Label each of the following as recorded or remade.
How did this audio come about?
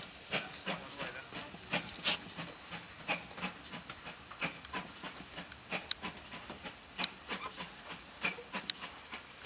recorded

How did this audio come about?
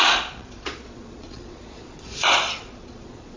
remade